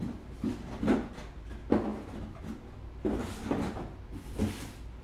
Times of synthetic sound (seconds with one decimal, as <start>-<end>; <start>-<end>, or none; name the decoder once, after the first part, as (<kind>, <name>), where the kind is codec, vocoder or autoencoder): none